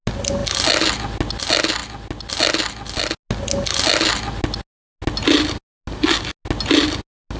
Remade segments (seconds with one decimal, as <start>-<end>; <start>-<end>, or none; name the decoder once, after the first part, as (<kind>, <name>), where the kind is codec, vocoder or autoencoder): none

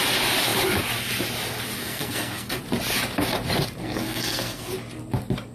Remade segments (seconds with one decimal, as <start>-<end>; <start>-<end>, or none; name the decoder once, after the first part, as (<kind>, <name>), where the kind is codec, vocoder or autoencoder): 1.8-2.6 (codec, SNAC); 3.8-4.7

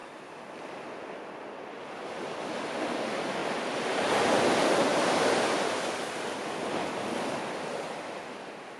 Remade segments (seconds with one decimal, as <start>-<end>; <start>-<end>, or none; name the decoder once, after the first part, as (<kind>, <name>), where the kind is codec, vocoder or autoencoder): 0.0-2.8 (vocoder, BigVGAN v2); 4.9-7.4